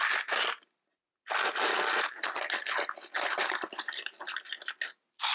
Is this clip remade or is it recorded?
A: recorded